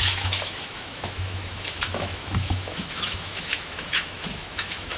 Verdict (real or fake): fake